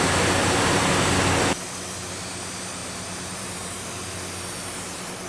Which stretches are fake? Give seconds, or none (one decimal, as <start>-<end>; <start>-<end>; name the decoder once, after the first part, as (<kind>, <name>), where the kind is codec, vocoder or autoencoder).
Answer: 0.4-1.1 (vocoder, BigVGAN v2); 2.8-3.9